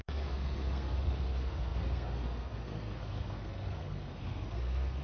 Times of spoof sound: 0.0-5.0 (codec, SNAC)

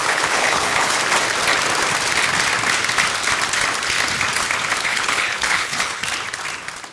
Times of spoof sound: 0.0-1.0 (codec, HILCodec); 4.9-6.0

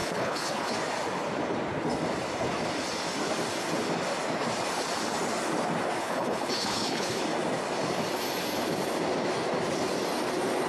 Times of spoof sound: 0.0-0.7 (codec, HILCodec); 6.0-7.2

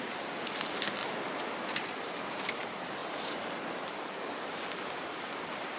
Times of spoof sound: 3.0-4.6 (vocoder, BigVGAN v2)

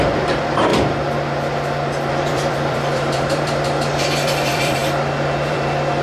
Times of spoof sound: 0.0-0.7 (vocoder, BigVGAN v2); 2.1-4.8; 5.5-6.0

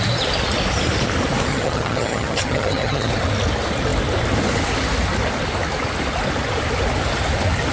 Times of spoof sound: 1.5-3.1 (vocoder, HiFi-GAN)

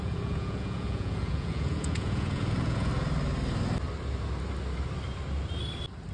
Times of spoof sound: 0.0-2.9 (vocoder, Vocos)

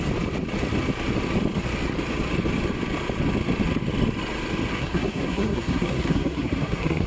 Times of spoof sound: 4.7-7.1 (codec, SNAC)